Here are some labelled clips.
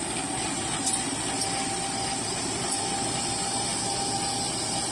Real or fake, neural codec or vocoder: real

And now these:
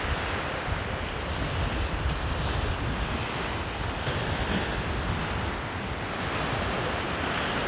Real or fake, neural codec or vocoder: real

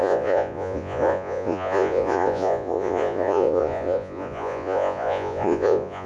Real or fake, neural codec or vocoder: fake, vocoder, Vocos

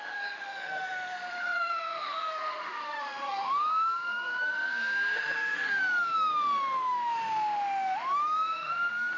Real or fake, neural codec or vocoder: fake, autoencoder, DAC-VAE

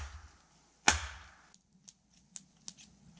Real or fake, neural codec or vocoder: real